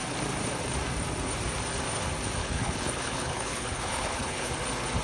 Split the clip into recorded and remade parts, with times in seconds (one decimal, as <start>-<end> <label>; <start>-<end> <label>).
0.0-2.4 recorded; 2.4-4.5 remade; 4.5-5.0 recorded

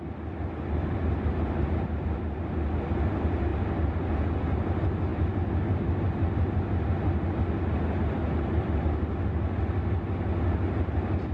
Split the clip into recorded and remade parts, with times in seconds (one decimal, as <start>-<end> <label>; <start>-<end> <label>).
0.0-11.3 recorded

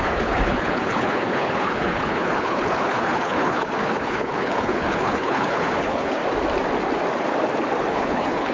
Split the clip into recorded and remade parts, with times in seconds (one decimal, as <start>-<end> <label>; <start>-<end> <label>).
0.0-6.2 remade; 6.2-7.9 recorded; 7.9-8.5 remade

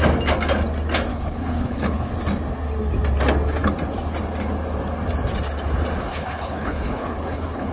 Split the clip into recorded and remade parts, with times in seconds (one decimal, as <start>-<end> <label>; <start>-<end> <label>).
0.0-1.1 recorded; 1.1-2.1 remade; 2.1-6.1 recorded; 6.1-7.7 remade